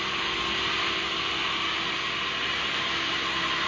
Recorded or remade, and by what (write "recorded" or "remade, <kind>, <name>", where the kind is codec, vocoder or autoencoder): recorded